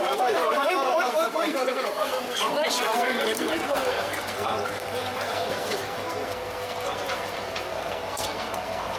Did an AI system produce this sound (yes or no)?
yes